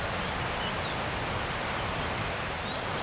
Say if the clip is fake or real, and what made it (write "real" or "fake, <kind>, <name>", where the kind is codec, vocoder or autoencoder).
real